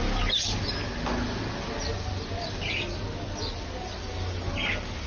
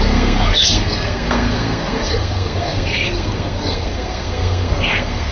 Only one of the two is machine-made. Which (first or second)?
second